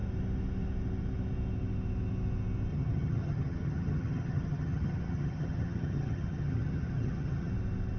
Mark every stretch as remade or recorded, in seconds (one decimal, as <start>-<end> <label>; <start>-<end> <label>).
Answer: 0.0-2.7 recorded; 2.7-7.5 remade; 7.5-8.0 recorded